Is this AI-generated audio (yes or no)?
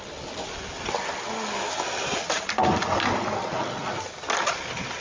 no